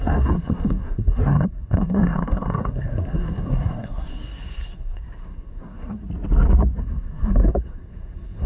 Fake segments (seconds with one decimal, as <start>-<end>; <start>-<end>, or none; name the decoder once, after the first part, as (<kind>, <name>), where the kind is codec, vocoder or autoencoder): 0.0-6.0 (codec, SNAC); 6.8-8.5